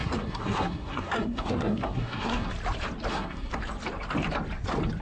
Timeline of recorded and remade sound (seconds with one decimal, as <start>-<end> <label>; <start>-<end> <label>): 0.0-2.5 remade; 2.5-3.1 recorded; 3.1-3.6 remade; 3.6-5.0 recorded

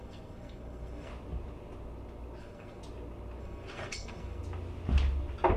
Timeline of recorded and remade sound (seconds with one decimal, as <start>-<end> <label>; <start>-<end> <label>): 0.0-1.1 remade; 1.1-2.4 recorded; 2.4-2.8 remade; 2.8-3.4 recorded; 3.4-4.4 remade; 4.4-5.6 recorded

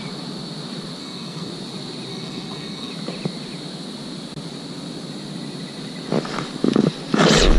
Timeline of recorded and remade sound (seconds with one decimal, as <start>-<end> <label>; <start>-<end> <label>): 0.0-1.0 recorded; 1.0-1.5 remade; 1.5-2.1 recorded; 2.1-2.9 remade; 2.9-7.6 recorded

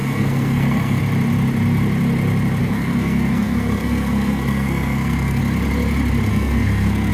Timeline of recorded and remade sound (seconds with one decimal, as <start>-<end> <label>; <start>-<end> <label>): 0.0-1.0 remade; 1.0-2.6 recorded; 2.6-5.4 remade; 5.4-6.3 recorded; 6.3-7.1 remade

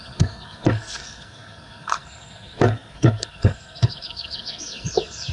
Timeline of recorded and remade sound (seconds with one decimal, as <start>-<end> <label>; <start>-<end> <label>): 0.0-5.3 remade

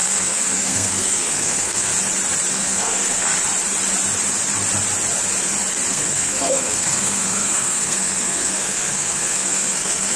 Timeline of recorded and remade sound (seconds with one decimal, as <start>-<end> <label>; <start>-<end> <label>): 0.0-1.9 remade; 1.9-2.5 recorded; 2.5-3.3 remade; 3.3-5.9 recorded; 5.9-10.2 remade

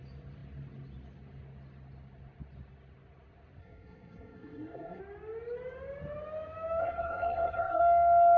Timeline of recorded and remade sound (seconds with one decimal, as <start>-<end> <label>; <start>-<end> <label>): 0.0-3.6 recorded; 3.6-5.0 remade; 5.0-6.8 recorded; 6.8-7.8 remade; 7.8-8.4 recorded